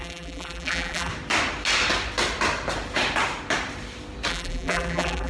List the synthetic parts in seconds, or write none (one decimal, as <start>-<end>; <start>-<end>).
0.0-1.1; 4.3-5.3